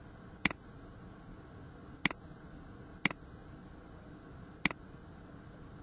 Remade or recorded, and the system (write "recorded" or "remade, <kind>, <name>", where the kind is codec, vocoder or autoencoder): recorded